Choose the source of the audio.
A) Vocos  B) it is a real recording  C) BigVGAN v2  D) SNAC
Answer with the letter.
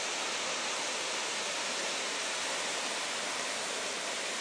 B